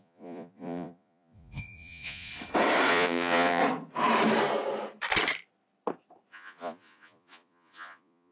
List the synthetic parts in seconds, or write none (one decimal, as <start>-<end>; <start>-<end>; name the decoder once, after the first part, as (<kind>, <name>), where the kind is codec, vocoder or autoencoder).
0.0-2.3 (vocoder, Vocos); 2.9-3.6; 6.3-8.3